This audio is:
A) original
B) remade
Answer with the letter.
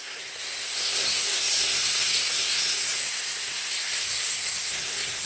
B